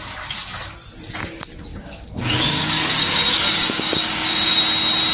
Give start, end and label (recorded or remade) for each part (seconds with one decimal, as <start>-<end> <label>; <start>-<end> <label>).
0.0-1.7 recorded; 1.7-4.6 remade; 4.6-5.1 recorded